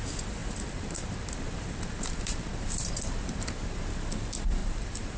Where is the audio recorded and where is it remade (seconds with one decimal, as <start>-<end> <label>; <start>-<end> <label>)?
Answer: 0.0-0.4 recorded; 0.4-3.5 remade; 3.5-4.6 recorded; 4.6-5.2 remade